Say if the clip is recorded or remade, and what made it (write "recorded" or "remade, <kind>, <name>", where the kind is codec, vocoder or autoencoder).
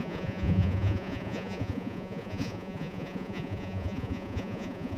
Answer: remade, vocoder, Vocos